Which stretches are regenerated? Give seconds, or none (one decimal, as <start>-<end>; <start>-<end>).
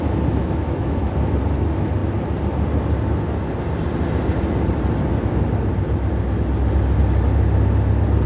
0.4-1.1